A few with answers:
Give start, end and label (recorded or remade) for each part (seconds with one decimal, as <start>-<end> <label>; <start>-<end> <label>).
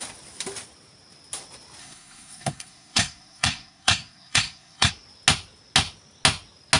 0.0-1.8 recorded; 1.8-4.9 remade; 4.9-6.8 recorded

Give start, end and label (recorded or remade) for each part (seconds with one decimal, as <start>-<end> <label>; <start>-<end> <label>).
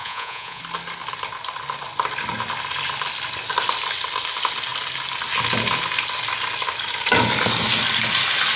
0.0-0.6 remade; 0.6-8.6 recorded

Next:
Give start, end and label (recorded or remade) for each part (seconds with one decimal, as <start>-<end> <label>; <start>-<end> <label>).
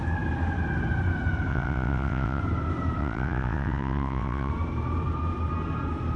0.0-1.5 recorded; 1.5-2.4 remade; 2.4-3.0 recorded; 3.0-4.5 remade; 4.5-6.2 recorded